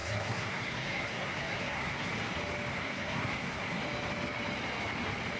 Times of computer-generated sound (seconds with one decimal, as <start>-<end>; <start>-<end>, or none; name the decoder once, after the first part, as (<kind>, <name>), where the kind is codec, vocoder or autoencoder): 0.0-2.1 (codec, SNAC); 2.7-3.8